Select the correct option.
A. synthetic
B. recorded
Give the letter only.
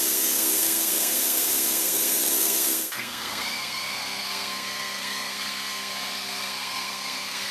A